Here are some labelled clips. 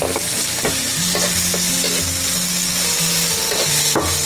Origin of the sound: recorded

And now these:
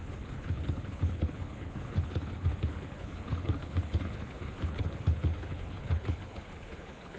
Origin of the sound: remade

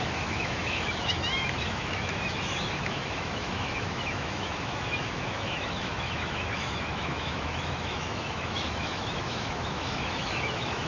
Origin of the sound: remade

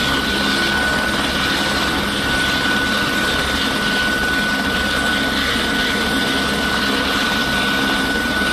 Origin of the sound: recorded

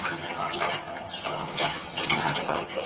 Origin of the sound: remade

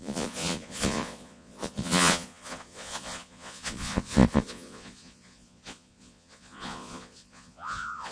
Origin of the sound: remade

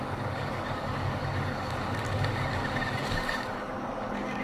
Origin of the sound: remade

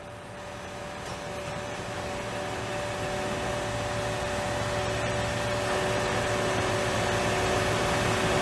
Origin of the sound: recorded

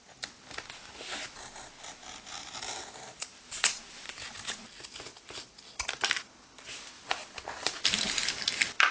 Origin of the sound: recorded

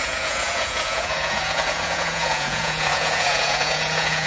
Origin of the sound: remade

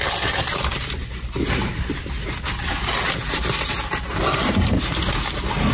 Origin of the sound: recorded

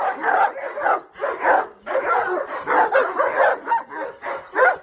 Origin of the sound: recorded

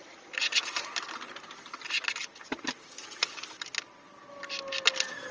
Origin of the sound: recorded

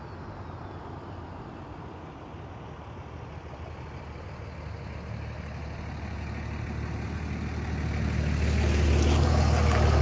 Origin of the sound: recorded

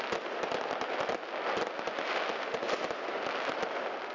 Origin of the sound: recorded